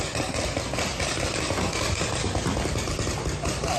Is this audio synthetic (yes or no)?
no